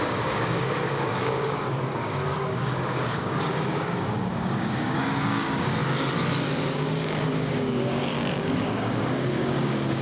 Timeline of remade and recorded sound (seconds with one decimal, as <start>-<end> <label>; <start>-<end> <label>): 0.0-5.8 remade; 5.8-6.7 recorded; 6.7-10.0 remade